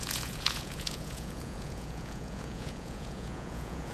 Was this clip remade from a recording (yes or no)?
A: yes